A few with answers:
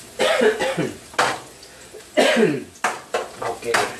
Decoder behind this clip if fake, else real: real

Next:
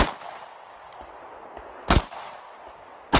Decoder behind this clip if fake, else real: real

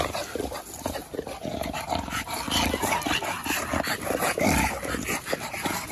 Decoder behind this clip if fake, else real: real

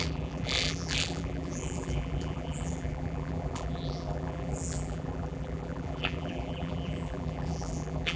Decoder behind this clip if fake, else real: fake, vocoder, BigVGAN v2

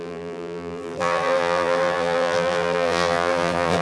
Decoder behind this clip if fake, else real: fake, vocoder, BigVGAN v2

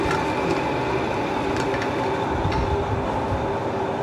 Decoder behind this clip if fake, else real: real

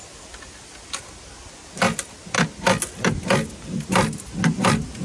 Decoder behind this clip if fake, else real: real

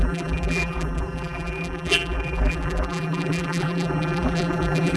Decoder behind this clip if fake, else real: fake, vocoder, BigVGAN v2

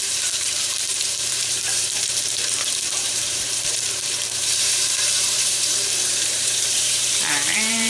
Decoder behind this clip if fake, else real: fake, vocoder, BigVGAN v2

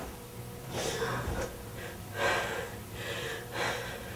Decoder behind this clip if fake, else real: real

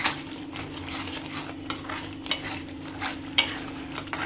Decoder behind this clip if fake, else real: real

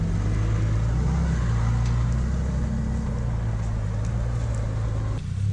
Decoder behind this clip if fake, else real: real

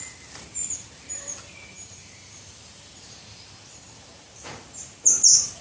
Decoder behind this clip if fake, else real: fake, vocoder, BigVGAN v2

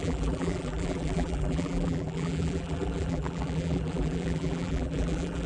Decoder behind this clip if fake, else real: fake, vocoder, BigVGAN v2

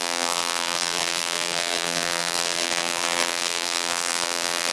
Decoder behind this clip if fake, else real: fake, vocoder, BigVGAN v2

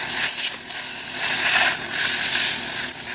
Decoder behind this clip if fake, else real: real